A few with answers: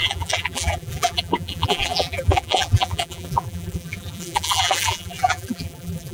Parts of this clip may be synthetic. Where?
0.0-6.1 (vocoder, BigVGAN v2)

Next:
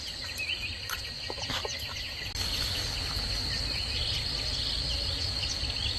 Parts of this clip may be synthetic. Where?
1.7-2.3 (vocoder, BigVGAN v2)